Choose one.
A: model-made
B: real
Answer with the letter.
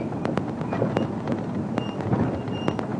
B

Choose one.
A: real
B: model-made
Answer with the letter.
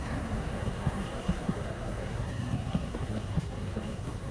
B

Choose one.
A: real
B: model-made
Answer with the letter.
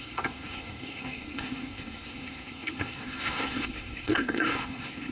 B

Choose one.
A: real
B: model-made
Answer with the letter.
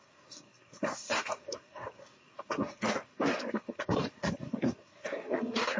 B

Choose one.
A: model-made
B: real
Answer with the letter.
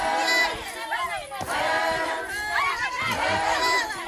B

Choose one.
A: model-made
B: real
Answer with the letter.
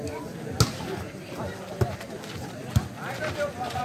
B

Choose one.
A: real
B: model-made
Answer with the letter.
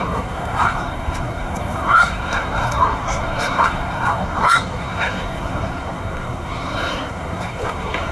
B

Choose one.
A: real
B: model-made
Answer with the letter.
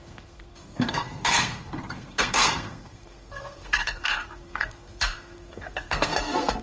B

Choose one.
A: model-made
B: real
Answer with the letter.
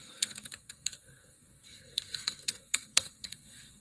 A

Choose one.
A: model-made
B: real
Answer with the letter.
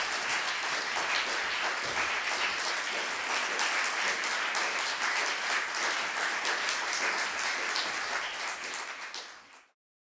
B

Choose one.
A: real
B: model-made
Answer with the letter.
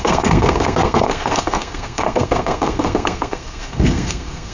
B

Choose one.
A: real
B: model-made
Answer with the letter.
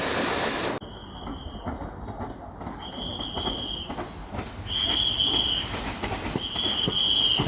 A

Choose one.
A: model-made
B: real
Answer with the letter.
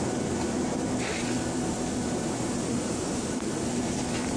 B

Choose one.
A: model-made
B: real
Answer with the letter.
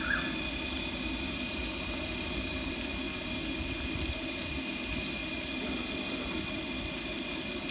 B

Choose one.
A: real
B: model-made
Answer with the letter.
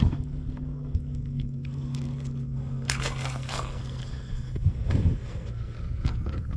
B